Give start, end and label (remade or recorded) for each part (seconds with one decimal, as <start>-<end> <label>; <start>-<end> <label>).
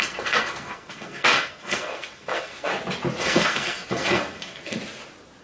0.0-2.7 remade; 2.7-3.2 recorded; 3.2-4.8 remade; 4.8-5.4 recorded